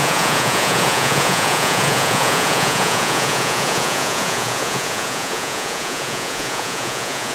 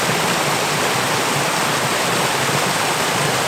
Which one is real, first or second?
second